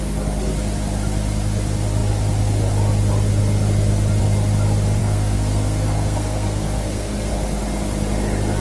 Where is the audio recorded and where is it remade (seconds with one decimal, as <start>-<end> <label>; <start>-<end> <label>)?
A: 0.0-5.0 recorded; 5.0-7.3 remade; 7.3-8.6 recorded